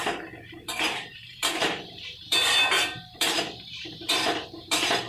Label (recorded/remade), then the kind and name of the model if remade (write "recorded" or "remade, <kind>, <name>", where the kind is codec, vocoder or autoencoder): remade, vocoder, BigVGAN v2